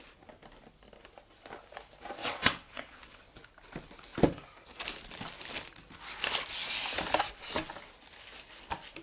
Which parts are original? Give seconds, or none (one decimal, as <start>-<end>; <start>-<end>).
0.0-2.2; 3.2-9.0